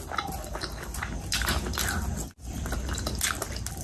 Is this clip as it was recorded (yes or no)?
yes